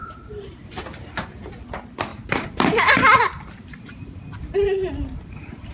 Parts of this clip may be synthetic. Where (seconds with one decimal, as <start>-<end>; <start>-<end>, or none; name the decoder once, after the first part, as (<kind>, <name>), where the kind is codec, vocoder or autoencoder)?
0.0-0.7 (vocoder, BigVGAN v2); 2.1-5.7